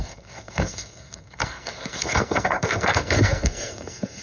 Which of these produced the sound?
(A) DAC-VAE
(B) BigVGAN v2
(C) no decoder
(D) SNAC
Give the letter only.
D